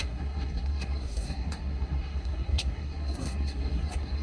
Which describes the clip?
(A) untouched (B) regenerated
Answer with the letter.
B